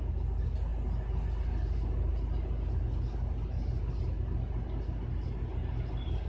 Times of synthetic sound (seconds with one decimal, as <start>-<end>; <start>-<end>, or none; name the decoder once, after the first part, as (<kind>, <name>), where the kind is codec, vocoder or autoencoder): none